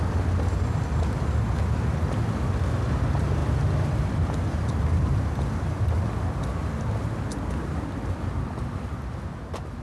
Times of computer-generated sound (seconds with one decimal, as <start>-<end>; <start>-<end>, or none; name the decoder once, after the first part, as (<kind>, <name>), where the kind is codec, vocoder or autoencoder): none